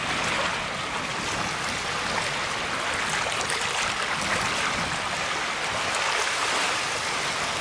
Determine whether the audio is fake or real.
real